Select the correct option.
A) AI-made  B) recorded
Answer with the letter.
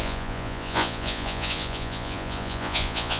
A